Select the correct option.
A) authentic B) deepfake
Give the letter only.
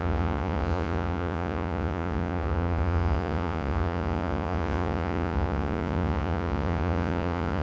B